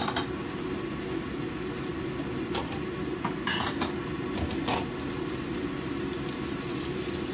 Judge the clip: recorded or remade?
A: recorded